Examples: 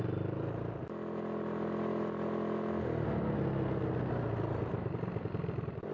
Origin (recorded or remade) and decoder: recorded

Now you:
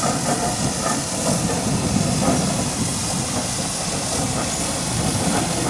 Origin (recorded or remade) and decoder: recorded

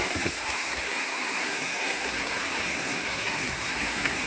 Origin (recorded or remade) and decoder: remade, codec, SNAC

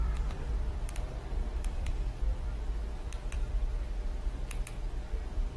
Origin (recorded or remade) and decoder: remade, vocoder, BigVGAN v2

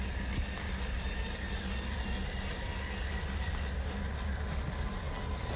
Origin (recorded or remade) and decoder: recorded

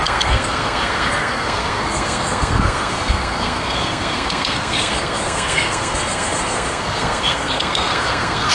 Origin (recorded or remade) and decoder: remade, codec, SNAC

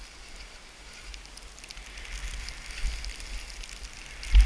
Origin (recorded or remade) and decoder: recorded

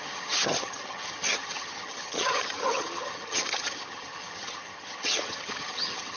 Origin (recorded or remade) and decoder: remade, vocoder, HiFi-GAN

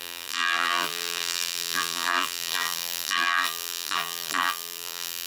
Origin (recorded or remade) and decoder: remade, vocoder, BigVGAN v2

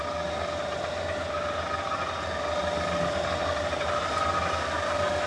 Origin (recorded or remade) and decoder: recorded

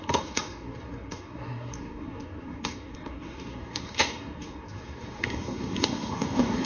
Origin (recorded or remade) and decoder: remade, codec, SNAC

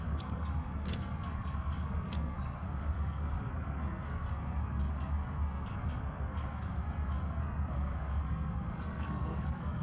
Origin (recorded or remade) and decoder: remade, codec, SNAC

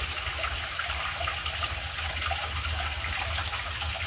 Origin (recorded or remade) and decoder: recorded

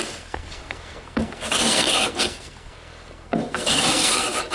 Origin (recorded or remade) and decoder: remade, codec, SNAC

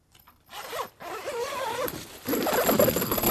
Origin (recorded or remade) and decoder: recorded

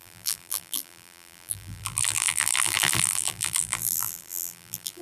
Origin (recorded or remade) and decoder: remade, vocoder, BigVGAN v2